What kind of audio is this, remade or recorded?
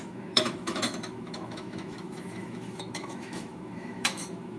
remade